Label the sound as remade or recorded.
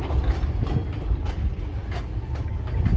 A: recorded